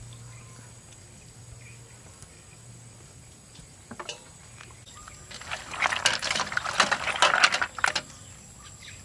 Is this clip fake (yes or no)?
no